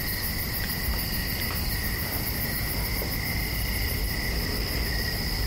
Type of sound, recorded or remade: remade